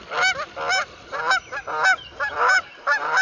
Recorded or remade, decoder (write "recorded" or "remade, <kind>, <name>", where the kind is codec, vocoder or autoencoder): recorded